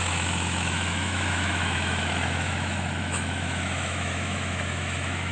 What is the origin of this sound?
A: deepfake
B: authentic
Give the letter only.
A